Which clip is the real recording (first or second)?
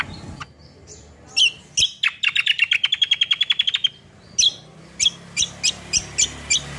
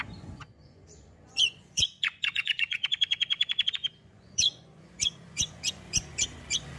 first